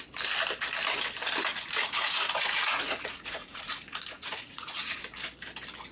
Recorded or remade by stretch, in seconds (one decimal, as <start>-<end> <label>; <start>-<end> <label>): 0.0-1.5 recorded; 1.5-5.0 remade; 5.0-5.9 recorded